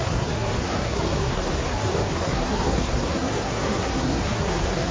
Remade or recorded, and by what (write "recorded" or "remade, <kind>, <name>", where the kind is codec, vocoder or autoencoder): remade, codec, SNAC